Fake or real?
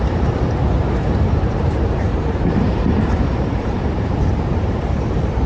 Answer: fake